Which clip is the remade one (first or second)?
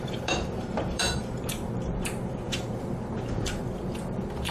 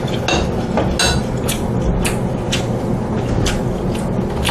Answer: first